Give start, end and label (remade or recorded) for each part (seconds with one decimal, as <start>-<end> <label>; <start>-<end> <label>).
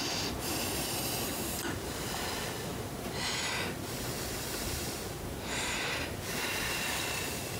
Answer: 0.0-7.6 recorded